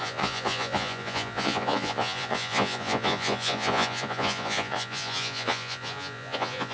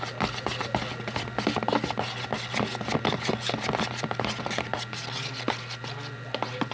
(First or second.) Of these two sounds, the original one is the second